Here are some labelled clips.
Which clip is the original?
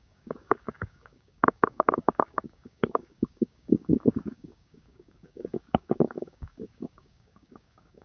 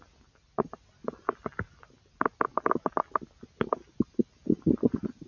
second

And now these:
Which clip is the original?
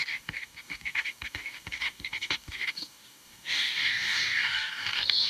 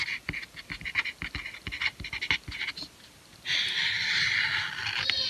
second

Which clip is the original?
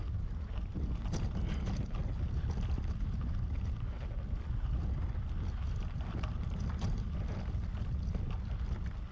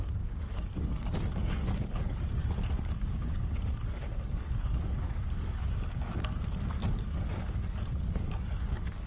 first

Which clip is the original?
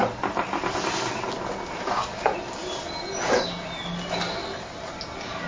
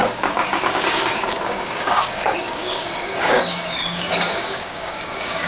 first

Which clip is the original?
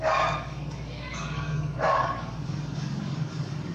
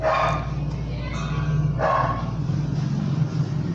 second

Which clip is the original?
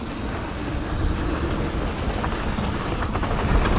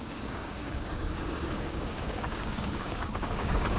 first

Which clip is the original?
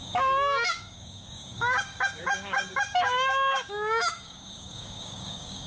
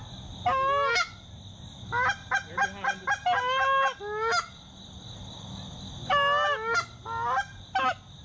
second